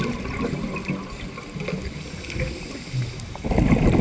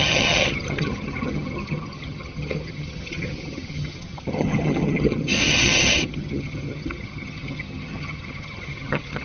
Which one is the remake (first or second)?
second